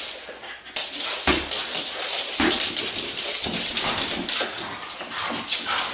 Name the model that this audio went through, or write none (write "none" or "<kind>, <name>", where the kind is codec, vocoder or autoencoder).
none